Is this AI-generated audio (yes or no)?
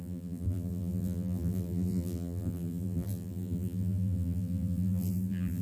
yes